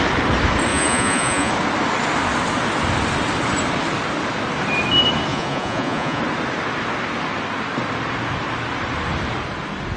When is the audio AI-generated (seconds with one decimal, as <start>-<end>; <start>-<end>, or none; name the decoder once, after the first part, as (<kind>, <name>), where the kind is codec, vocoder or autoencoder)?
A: 0.7-1.5 (vocoder, Vocos); 5.3-6.2